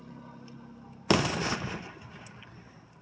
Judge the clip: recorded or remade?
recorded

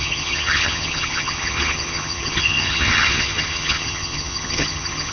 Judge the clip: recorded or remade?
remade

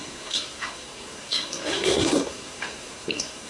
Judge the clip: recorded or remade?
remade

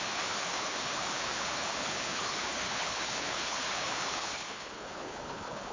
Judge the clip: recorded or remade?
remade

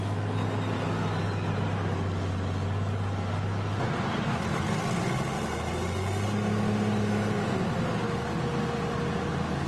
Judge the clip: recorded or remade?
recorded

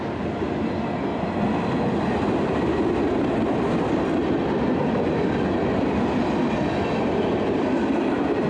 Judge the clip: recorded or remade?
recorded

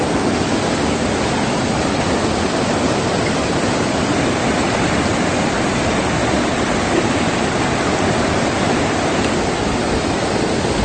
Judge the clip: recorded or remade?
remade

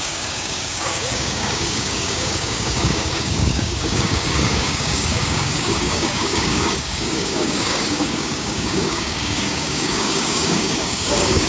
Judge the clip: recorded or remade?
remade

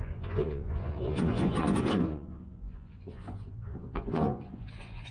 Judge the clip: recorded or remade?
remade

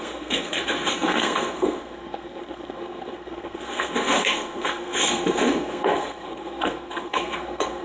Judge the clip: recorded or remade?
remade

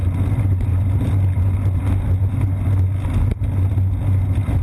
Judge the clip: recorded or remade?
recorded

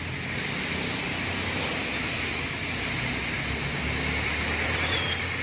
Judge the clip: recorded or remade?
recorded